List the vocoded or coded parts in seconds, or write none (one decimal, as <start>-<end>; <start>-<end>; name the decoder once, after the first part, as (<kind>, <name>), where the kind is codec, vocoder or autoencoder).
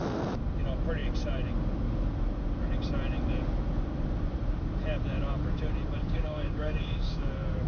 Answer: 6.0-7.3 (codec, DAC)